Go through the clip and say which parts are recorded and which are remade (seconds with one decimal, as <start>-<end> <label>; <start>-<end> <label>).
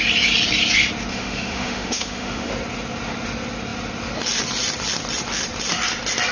0.0-1.1 recorded; 1.1-2.5 remade; 2.5-6.3 recorded